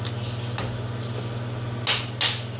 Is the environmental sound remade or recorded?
recorded